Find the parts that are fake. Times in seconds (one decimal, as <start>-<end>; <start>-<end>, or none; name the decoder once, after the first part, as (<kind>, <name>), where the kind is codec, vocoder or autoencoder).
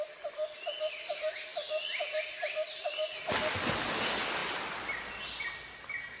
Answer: none